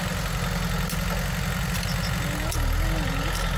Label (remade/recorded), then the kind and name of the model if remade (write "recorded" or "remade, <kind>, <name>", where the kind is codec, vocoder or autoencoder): recorded